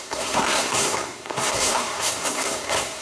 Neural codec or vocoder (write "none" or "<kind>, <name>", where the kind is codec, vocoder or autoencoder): codec, SNAC